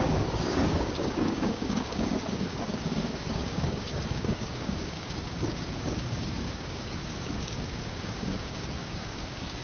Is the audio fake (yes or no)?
yes